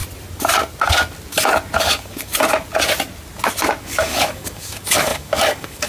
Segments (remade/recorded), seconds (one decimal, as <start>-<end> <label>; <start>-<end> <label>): 0.0-1.8 recorded; 1.8-2.3 remade; 2.3-3.8 recorded; 3.8-5.9 remade